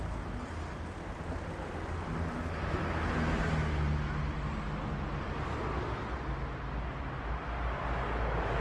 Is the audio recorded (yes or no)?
yes